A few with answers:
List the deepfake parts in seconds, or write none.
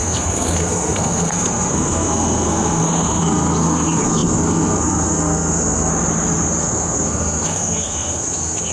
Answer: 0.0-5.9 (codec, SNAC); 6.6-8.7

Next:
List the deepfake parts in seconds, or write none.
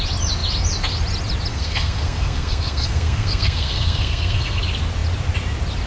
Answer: 1.5-4.6 (codec, SNAC)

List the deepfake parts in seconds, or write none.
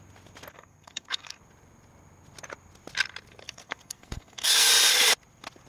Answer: 0.5-1.4 (codec, SNAC); 3.4-4.7